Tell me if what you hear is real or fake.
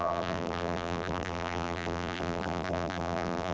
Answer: fake